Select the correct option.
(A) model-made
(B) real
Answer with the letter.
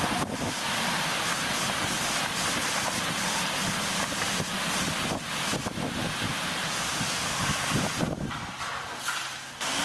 B